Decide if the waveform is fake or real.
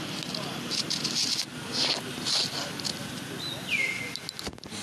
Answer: real